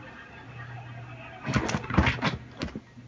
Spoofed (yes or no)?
no